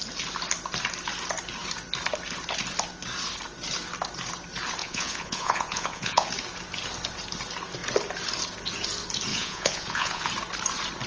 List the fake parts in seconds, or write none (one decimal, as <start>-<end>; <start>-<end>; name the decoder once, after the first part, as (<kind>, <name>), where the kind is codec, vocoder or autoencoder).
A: 4.8-6.3 (vocoder, Vocos); 9.3-10.3